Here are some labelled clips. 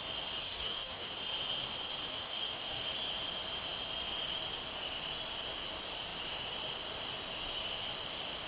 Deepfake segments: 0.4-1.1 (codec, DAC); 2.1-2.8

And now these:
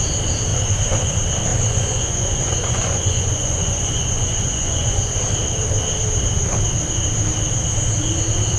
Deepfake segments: 0.5-1.1 (vocoder, Vocos); 1.5-5.2

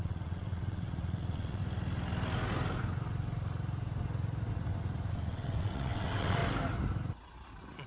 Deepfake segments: 0.0-1.6 (vocoder, WaveNeXt); 5.1-6.4